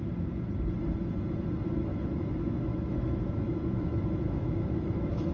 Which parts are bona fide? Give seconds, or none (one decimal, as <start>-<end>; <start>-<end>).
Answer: 0.0-1.9